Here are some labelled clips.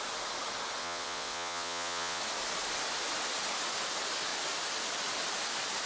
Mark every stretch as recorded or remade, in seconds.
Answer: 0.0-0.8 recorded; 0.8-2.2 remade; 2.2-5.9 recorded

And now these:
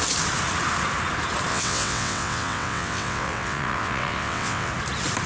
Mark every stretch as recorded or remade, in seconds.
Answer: 0.0-1.5 recorded; 1.5-4.7 remade; 4.7-5.3 recorded

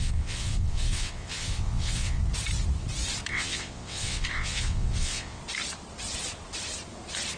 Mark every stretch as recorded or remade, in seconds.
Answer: 0.0-2.2 remade; 2.2-3.3 recorded; 3.3-5.4 remade; 5.4-7.4 recorded

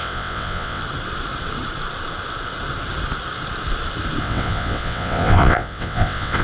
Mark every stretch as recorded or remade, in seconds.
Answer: 0.0-0.8 remade; 0.8-4.2 recorded; 4.2-6.4 remade

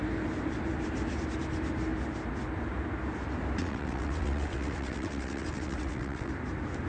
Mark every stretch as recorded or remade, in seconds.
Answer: 0.0-3.6 recorded; 3.6-6.3 remade; 6.3-6.9 recorded